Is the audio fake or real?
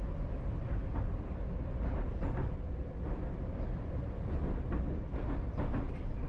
real